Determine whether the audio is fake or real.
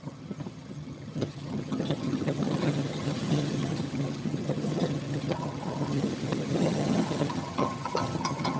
fake